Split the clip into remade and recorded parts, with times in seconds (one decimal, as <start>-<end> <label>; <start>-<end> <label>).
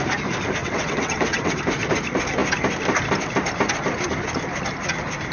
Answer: 0.0-0.6 recorded; 0.6-1.6 remade; 1.6-5.3 recorded